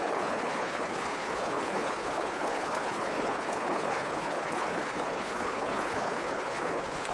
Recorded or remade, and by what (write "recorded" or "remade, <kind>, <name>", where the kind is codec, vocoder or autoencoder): remade, codec, HILCodec